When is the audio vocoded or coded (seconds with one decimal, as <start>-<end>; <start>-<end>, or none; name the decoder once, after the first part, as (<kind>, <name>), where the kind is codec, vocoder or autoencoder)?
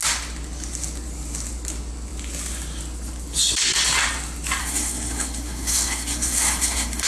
4.6-7.1 (codec, SNAC)